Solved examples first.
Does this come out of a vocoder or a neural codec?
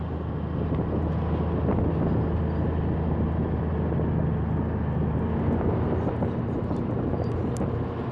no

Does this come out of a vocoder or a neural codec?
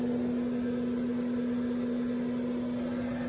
no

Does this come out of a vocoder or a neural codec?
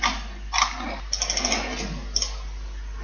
no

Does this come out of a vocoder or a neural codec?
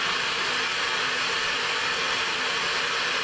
no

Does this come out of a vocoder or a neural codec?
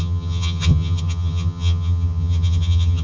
yes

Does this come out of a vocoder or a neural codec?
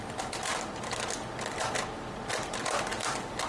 no